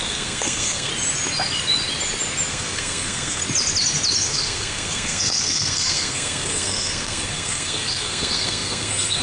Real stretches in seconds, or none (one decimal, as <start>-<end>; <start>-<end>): 0.9-2.5; 3.4-4.2